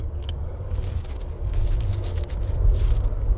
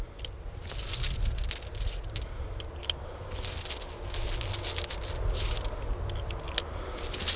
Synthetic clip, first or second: first